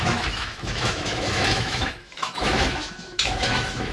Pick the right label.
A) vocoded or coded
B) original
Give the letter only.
A